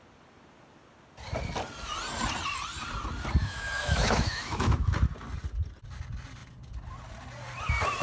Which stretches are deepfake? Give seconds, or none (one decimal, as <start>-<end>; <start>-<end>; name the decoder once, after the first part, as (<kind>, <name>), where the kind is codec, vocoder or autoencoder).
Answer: 3.4-4.9 (autoencoder, DAC-VAE)